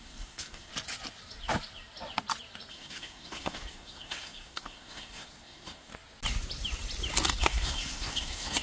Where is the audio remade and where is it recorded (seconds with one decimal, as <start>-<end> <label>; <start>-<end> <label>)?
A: 0.0-0.7 remade; 0.7-2.7 recorded; 2.7-5.9 remade; 5.9-7.4 recorded; 7.4-8.6 remade